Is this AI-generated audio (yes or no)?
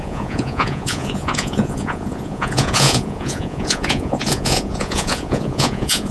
yes